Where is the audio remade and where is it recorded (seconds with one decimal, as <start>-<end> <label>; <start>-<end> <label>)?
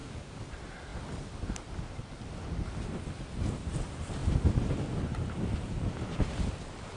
0.0-0.5 remade; 0.5-7.0 recorded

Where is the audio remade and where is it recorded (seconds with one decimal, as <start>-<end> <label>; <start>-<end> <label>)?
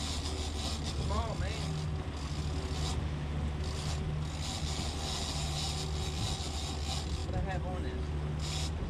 0.0-8.9 recorded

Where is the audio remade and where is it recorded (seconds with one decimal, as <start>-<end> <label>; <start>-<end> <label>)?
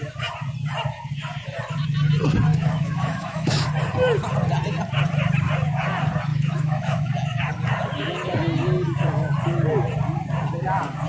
0.0-2.5 recorded; 2.5-3.7 remade; 3.7-6.3 recorded; 6.3-7.1 remade; 7.1-11.1 recorded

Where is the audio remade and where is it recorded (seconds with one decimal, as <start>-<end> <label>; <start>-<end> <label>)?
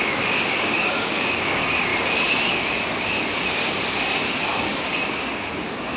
0.0-1.9 remade; 1.9-4.5 recorded; 4.5-6.0 remade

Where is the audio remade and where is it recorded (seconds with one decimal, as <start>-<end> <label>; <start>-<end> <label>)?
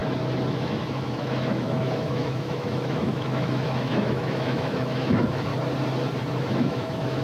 0.0-0.5 recorded; 0.5-5.5 remade; 5.5-6.4 recorded; 6.4-7.2 remade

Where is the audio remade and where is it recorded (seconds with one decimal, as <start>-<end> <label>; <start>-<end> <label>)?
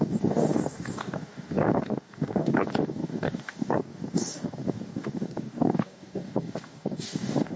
0.0-7.6 remade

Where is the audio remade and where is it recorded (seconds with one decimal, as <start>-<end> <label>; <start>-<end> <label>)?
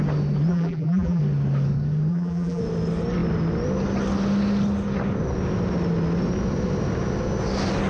0.0-0.5 recorded; 0.5-1.2 remade; 1.2-2.1 recorded; 2.1-2.6 remade; 2.6-7.9 recorded